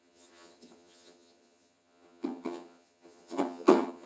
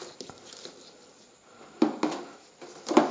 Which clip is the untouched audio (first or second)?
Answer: second